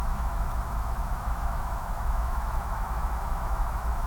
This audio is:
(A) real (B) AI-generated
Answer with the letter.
B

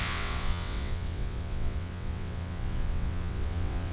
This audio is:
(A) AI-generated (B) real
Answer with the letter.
A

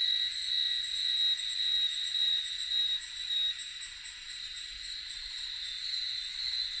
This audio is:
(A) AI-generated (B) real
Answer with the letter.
B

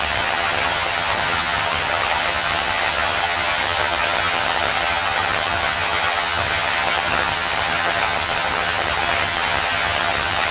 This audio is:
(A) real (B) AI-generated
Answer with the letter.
B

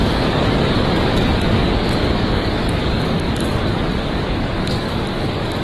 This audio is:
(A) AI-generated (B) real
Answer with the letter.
A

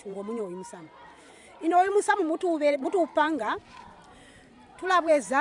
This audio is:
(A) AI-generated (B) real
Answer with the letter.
A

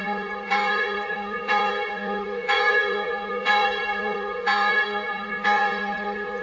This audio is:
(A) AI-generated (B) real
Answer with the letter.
A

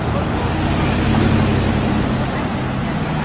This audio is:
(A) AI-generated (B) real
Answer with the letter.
B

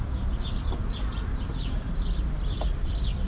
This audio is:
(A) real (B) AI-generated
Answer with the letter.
B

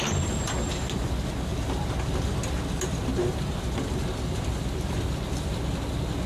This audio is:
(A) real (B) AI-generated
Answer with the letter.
A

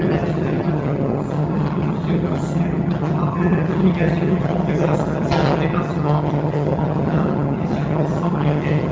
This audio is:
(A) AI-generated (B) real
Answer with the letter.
A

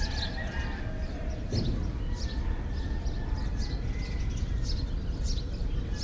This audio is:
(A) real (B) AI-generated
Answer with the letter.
A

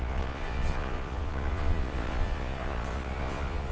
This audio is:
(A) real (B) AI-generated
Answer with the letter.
B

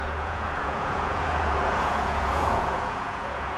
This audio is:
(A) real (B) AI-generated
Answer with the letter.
B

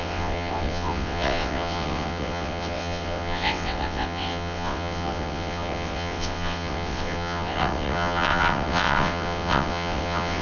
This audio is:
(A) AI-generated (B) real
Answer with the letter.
A